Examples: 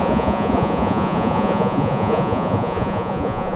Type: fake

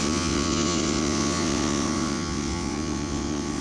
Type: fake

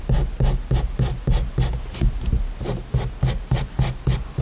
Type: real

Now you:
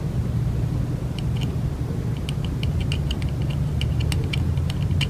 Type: real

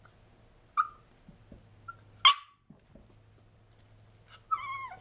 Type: real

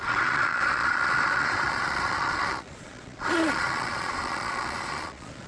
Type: fake